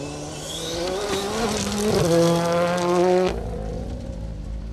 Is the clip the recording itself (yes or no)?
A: yes